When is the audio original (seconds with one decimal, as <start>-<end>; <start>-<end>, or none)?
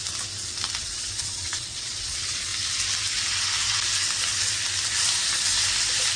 0.0-0.8; 2.5-6.2